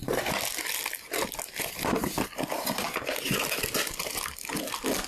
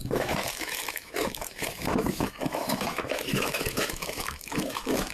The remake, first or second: second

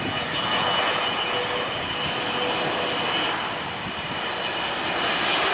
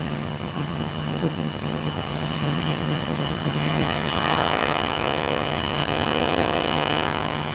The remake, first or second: second